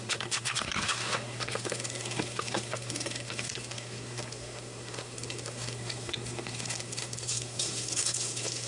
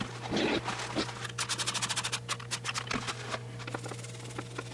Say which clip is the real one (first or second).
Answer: second